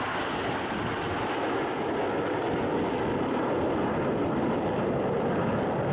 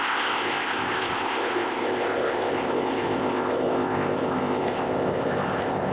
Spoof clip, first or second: second